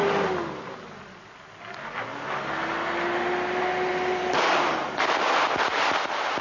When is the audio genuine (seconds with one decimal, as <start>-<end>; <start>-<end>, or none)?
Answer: 0.0-6.4